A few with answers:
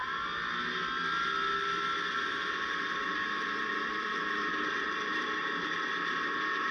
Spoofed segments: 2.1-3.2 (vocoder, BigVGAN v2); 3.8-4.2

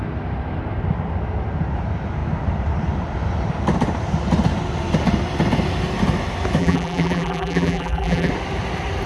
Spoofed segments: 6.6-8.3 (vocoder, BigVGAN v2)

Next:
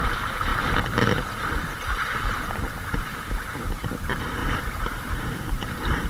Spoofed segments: 0.0-0.5 (vocoder, BigVGAN v2); 2.8-6.1

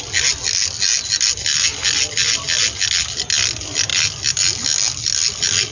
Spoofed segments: none